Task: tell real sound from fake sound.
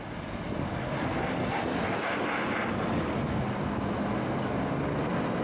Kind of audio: real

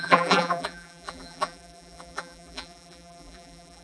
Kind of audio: fake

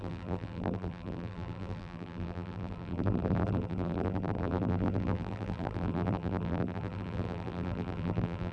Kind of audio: fake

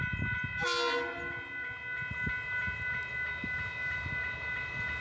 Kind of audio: real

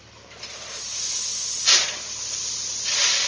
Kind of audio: real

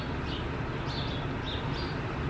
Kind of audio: real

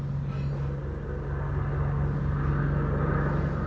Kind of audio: real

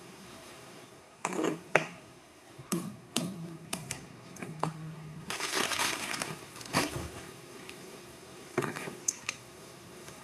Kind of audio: fake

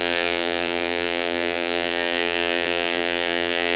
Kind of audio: fake